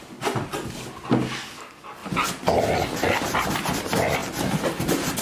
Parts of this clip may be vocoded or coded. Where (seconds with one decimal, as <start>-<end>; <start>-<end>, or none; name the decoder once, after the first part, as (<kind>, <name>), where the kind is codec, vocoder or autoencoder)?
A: 2.0-2.6 (vocoder, BigVGAN v2)